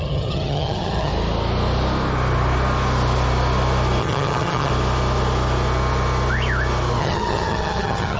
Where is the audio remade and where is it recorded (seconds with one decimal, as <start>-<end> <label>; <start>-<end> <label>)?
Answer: 0.0-1.1 remade; 1.1-4.0 recorded; 4.0-4.7 remade; 4.7-7.0 recorded; 7.0-8.2 remade

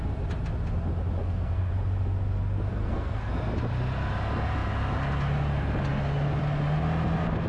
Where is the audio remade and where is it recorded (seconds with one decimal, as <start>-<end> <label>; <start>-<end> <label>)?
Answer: 0.0-1.2 recorded; 1.2-1.7 remade; 1.7-2.7 recorded; 2.7-3.3 remade; 3.3-7.5 recorded

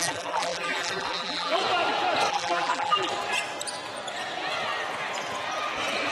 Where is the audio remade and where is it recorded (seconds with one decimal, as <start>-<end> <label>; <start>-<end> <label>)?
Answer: 0.0-1.6 remade; 1.6-2.3 recorded; 2.3-3.1 remade; 3.1-6.1 recorded

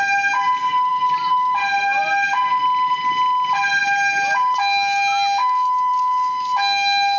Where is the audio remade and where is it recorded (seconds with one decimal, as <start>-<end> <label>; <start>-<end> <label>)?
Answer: 0.0-7.2 recorded

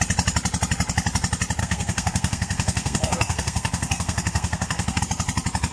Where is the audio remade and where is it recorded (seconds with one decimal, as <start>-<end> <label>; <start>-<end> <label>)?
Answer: 0.0-1.6 recorded; 1.6-5.0 remade; 5.0-5.7 recorded

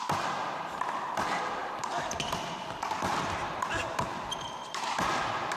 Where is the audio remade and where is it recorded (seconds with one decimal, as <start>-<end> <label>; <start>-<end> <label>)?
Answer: 0.0-1.6 recorded; 1.6-5.0 remade; 5.0-5.6 recorded

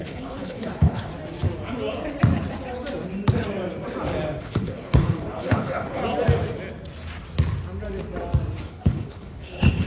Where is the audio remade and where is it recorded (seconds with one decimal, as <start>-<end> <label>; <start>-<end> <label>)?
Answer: 0.0-1.1 remade; 1.1-4.4 recorded; 4.4-6.0 remade; 6.0-8.6 recorded; 8.6-9.9 remade

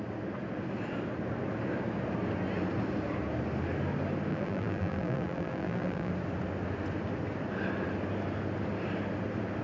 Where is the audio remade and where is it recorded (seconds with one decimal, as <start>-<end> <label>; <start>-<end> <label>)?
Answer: 0.0-4.3 recorded; 4.3-6.1 remade; 6.1-9.6 recorded